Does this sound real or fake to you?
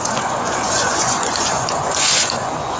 fake